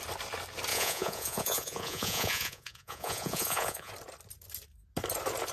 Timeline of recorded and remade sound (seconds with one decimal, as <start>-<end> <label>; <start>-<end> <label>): 0.0-0.7 recorded; 0.7-3.9 remade; 3.9-5.5 recorded